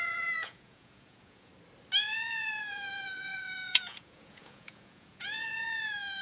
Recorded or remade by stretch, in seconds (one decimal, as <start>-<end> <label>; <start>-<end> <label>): 0.0-1.5 remade; 1.5-2.0 recorded; 2.0-6.2 remade